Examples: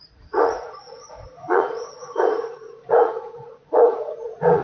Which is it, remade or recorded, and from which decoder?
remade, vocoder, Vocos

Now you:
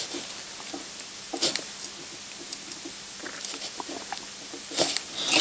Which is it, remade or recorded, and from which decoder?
recorded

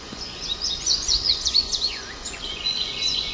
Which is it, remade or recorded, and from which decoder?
remade, vocoder, Vocos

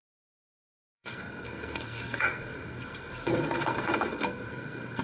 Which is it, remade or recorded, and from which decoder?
remade, codec, SNAC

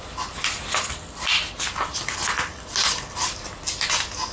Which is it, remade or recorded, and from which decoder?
recorded